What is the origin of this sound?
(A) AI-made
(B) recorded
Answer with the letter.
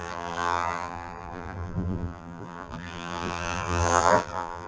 A